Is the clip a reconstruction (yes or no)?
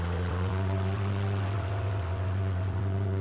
yes